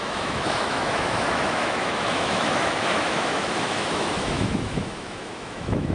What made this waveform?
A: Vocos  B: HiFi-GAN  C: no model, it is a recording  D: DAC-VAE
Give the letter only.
D